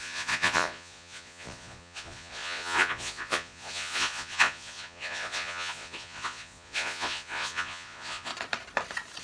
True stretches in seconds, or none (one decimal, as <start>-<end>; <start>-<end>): 8.3-9.2